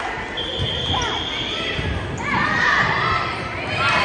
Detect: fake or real real